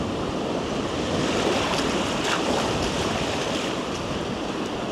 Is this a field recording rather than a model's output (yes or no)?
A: no